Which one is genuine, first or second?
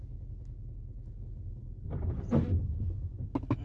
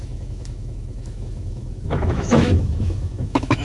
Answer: first